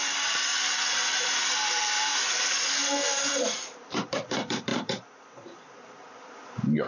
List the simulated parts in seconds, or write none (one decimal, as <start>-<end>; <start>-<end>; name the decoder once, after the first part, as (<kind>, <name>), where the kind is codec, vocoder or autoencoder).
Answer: 0.0-0.5 (vocoder, BigVGAN v2); 1.5-2.1; 3.3-6.9